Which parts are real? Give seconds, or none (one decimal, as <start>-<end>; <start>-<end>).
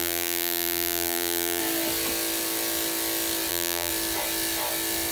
1.6-3.5; 3.9-5.1